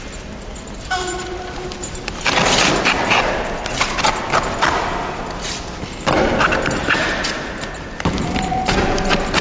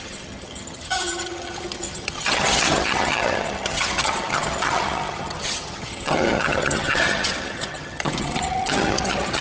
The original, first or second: first